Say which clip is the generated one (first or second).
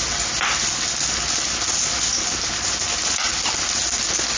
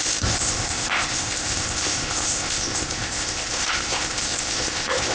second